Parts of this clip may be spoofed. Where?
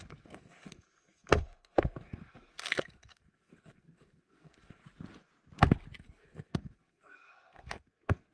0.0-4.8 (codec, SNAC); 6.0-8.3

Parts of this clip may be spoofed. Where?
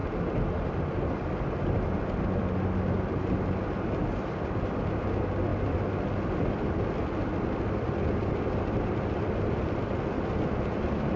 none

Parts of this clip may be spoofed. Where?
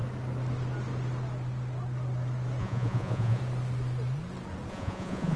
2.6-3.4 (vocoder, Vocos); 4.7-5.4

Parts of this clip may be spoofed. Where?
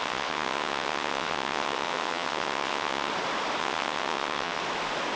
0.0-3.1 (vocoder, WaveNeXt); 3.6-4.6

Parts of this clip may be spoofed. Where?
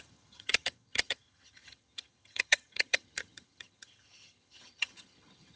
0.0-5.6 (vocoder, HiFi-GAN)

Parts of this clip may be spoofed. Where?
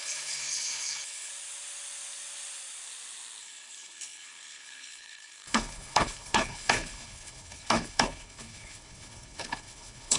0.0-1.3 (codec, HILCodec); 3.4-10.2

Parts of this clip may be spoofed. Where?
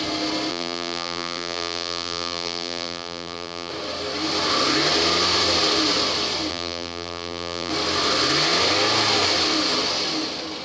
0.5-3.7 (vocoder, BigVGAN v2); 6.5-7.7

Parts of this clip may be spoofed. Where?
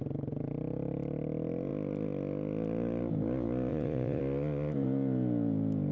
3.7-4.2 (vocoder, Vocos)